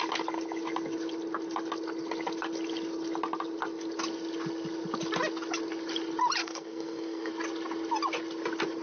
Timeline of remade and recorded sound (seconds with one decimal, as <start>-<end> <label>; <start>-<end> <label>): 0.0-6.4 recorded; 6.4-7.3 remade; 7.3-8.8 recorded